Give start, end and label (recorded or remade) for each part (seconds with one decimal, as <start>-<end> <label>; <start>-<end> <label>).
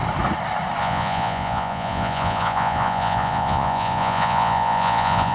0.0-0.8 recorded; 0.8-5.3 remade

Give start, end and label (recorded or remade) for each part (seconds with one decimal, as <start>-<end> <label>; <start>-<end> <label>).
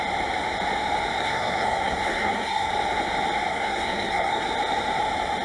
0.0-1.2 recorded; 1.2-2.7 remade; 2.7-3.5 recorded; 3.5-4.5 remade; 4.5-5.4 recorded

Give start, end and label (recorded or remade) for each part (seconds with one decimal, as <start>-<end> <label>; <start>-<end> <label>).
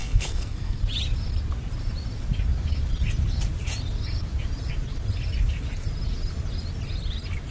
0.0-0.8 remade; 0.8-7.5 recorded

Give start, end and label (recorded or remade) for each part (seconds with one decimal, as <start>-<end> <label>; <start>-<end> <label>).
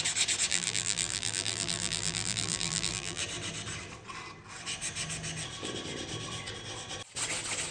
0.0-0.5 recorded; 0.5-3.2 remade; 3.2-7.7 recorded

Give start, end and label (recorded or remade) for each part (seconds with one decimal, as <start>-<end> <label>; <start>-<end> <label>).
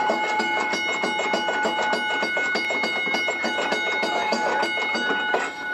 0.0-0.7 remade; 0.7-4.1 recorded; 4.1-4.5 remade; 4.5-5.3 recorded; 5.3-5.7 remade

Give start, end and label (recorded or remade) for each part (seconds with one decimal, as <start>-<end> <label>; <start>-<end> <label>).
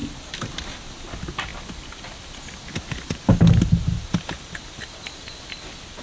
0.0-6.0 recorded